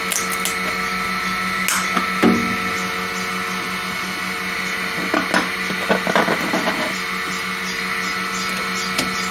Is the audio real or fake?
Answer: real